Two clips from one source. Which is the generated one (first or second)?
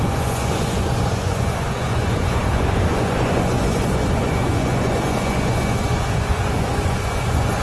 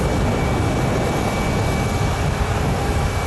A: first